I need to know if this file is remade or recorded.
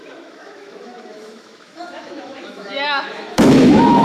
remade